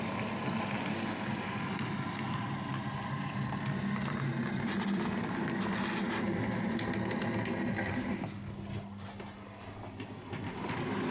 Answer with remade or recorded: recorded